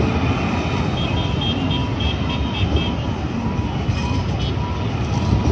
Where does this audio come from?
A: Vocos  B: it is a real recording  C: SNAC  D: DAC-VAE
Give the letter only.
B